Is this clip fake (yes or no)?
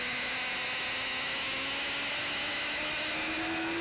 no